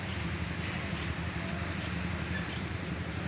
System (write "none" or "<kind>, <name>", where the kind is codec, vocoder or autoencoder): vocoder, BigVGAN v2